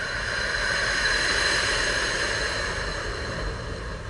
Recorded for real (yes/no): no